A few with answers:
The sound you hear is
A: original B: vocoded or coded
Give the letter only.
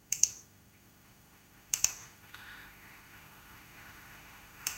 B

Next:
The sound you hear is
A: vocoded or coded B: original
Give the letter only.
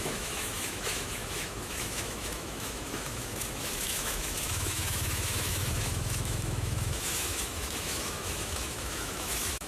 A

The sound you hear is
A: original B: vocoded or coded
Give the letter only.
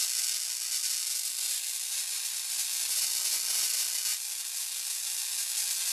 A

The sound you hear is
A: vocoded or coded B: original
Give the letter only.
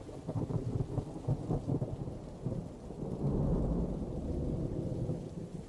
B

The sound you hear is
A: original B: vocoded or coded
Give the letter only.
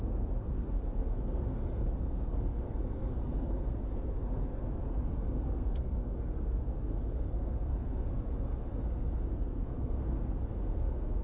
B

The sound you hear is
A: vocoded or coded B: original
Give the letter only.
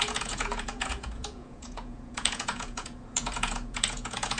A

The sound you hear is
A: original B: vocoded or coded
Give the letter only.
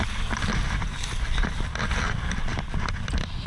A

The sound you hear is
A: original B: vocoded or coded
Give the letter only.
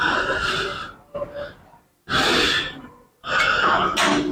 A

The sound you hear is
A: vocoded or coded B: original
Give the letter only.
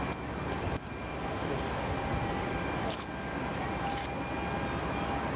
B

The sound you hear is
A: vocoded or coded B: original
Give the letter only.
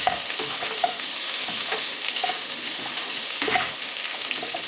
A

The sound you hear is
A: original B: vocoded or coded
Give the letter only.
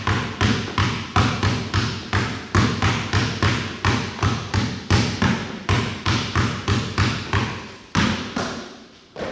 A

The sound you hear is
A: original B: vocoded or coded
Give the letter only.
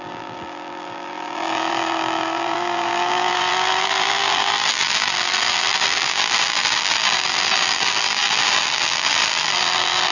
B